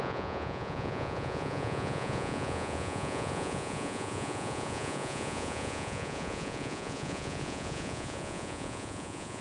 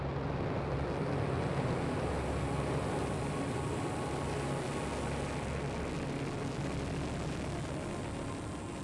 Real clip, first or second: second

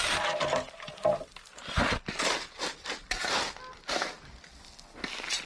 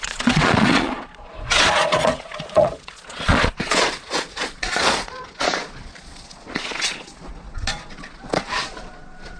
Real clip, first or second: first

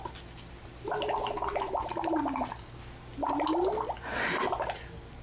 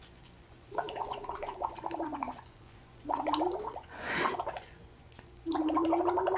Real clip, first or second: first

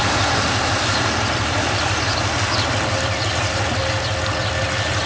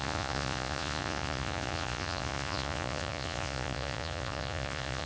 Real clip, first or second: first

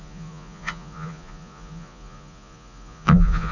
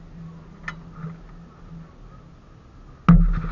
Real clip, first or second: second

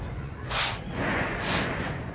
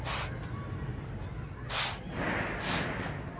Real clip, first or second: second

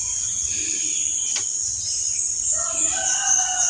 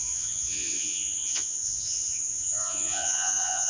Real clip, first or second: first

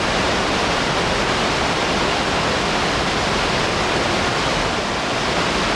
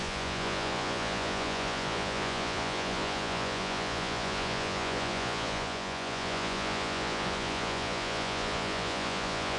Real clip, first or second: first